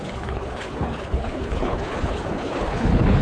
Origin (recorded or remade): remade